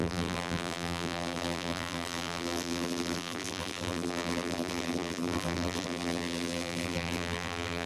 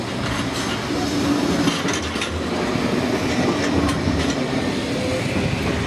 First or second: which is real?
second